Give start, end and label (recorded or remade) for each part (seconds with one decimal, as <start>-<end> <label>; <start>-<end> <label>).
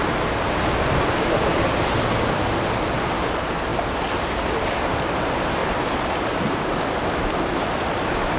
0.0-8.4 recorded